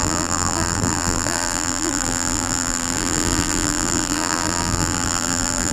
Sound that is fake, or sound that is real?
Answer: fake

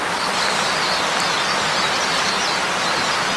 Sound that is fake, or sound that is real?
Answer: real